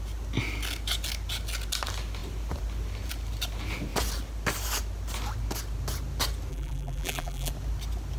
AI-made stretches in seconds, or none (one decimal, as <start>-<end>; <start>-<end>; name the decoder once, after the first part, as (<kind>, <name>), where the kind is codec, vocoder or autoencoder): 6.5-7.5 (vocoder, BigVGAN v2)